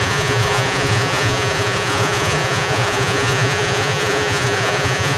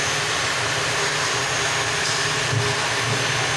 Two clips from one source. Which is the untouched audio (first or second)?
second